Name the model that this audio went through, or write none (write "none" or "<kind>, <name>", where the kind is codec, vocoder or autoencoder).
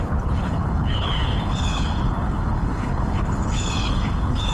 codec, HILCodec